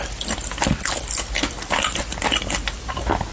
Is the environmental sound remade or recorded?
recorded